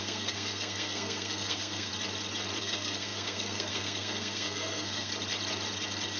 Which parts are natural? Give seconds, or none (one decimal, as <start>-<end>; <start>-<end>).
1.9-2.6; 5.1-6.2